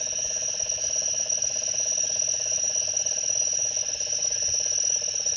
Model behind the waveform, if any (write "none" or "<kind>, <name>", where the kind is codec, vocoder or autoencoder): none